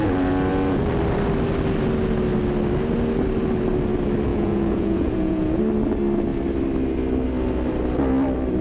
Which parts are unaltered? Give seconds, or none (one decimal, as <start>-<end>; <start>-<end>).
0.0-4.3; 5.6-8.6